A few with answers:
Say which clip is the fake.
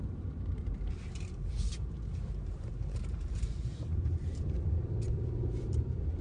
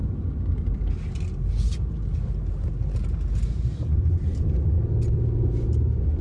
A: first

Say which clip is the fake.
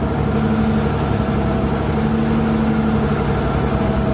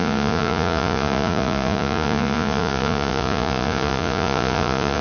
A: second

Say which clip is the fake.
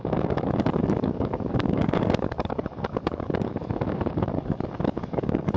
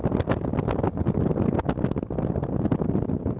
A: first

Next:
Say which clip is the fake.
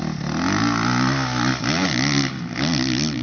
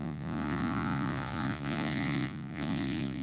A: second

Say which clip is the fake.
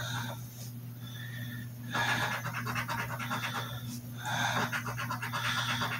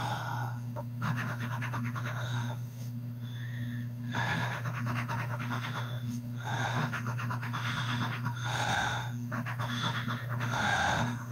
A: second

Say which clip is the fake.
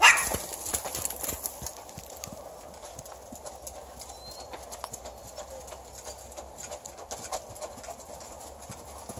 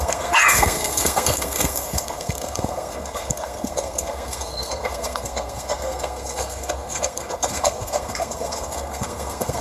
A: second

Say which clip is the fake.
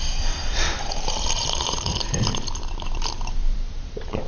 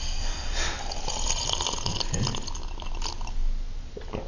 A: first